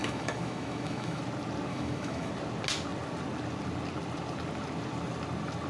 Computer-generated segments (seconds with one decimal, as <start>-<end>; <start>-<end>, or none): 0.0-1.2; 1.7-2.3